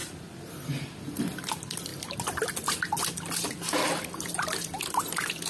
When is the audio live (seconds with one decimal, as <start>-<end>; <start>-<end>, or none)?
0.0-5.5